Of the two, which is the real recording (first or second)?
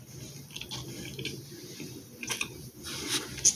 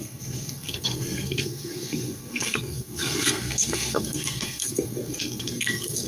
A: first